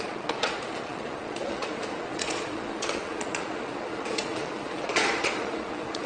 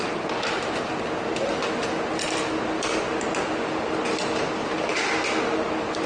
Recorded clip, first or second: second